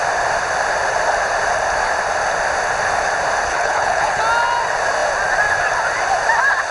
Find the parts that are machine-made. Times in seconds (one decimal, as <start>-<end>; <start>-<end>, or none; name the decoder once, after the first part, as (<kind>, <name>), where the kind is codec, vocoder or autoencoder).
3.5-4.2 (codec, HILCodec)